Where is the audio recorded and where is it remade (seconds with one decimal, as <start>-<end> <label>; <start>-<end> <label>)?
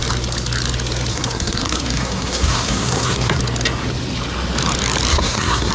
0.0-1.1 recorded; 1.1-3.4 remade; 3.4-5.1 recorded; 5.1-5.7 remade